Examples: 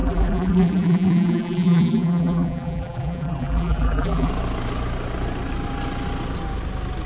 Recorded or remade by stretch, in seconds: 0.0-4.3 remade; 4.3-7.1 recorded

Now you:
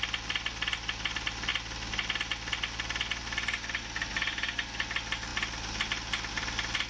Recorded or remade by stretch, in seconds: 0.0-1.5 remade; 1.5-4.1 recorded; 4.1-5.3 remade; 5.3-6.3 recorded; 6.3-6.9 remade

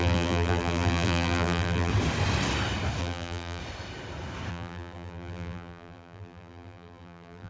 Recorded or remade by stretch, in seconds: 0.0-1.9 remade; 1.9-3.0 recorded; 3.0-3.6 remade; 3.6-4.5 recorded; 4.5-7.5 remade

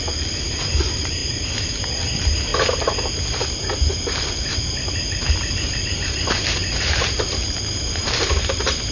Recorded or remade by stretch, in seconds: 0.0-2.5 remade; 2.5-4.3 recorded; 4.3-8.9 remade